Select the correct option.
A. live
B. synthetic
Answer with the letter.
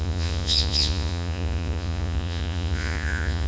B